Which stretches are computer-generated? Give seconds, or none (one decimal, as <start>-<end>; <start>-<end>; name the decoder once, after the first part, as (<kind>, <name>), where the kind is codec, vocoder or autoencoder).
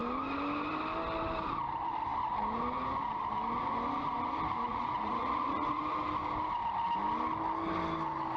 4.7-5.8 (vocoder, Vocos)